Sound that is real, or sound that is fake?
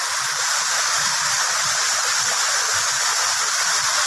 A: real